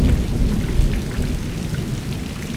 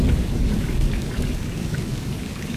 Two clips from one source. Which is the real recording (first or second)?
first